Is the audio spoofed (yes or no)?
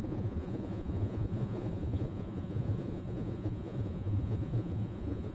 yes